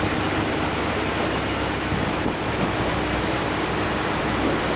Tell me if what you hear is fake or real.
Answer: real